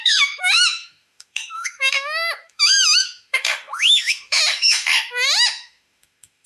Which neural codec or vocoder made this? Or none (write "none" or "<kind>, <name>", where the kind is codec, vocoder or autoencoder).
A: autoencoder, DAC-VAE